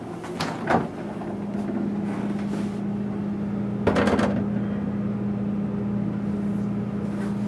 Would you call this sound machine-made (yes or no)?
no